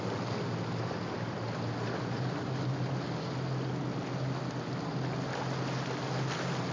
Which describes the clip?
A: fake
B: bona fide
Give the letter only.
B